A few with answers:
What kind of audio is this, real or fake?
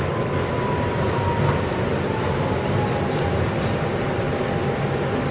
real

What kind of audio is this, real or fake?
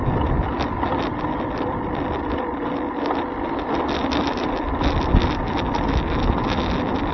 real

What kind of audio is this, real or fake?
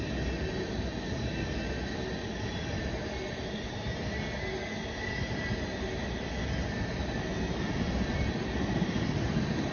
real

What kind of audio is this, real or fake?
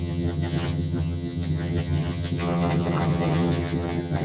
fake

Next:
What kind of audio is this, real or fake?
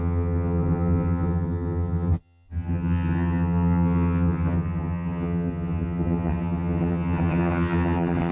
fake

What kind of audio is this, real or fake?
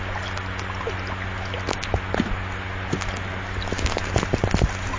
real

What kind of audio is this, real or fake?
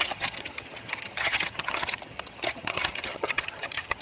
fake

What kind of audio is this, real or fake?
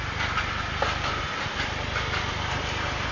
real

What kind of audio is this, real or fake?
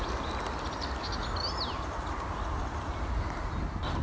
real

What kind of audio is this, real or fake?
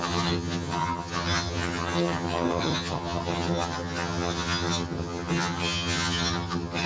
fake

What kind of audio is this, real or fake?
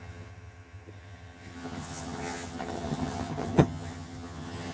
fake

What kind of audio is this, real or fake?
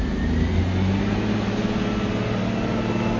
real